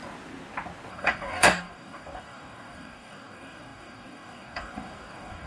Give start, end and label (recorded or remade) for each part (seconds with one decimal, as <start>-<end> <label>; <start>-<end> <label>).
0.0-0.9 recorded; 0.9-5.5 remade